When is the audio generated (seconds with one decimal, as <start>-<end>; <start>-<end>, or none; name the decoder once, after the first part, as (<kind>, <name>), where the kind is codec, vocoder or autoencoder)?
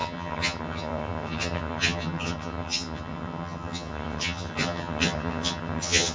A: 0.0-6.1 (vocoder, HiFi-GAN)